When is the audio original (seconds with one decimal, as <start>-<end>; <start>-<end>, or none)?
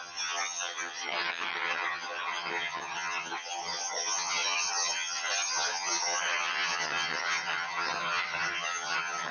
none